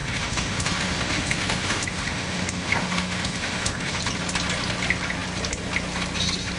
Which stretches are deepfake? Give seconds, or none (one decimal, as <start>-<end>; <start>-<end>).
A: 0.0-4.0